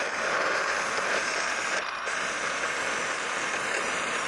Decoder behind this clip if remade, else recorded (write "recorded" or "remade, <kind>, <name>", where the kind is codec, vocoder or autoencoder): remade, vocoder, BigVGAN v2